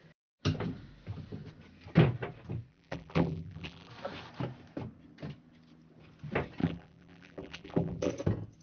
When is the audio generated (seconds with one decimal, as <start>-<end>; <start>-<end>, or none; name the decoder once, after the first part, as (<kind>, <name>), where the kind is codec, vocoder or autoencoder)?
2.7-3.9 (vocoder, BigVGAN v2); 6.6-8.1